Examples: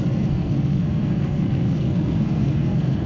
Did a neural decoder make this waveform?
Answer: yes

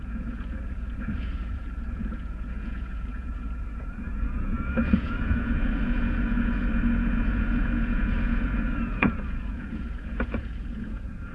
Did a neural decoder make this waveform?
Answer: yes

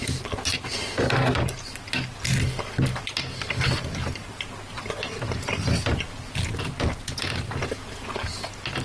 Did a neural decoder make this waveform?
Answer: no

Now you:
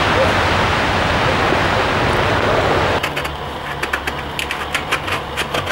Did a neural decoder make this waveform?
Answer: no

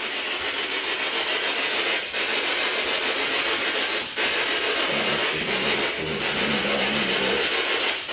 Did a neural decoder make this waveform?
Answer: no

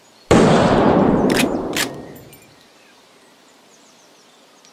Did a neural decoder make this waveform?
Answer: no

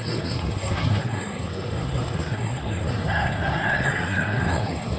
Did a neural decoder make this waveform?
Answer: yes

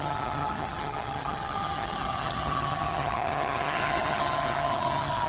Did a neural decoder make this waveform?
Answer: yes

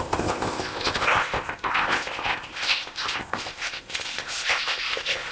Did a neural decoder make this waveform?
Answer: yes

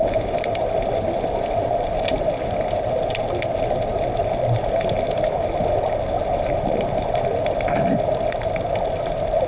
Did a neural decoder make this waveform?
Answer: no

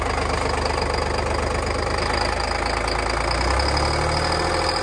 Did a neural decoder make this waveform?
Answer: no